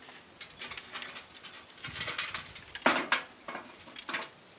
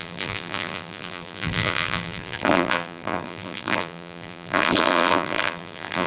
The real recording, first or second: first